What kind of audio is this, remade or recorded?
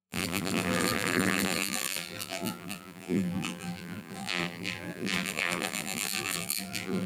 remade